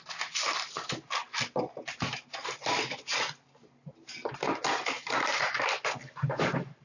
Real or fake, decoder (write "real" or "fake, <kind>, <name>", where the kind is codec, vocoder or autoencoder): real